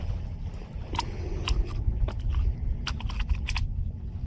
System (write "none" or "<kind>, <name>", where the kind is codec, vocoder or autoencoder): none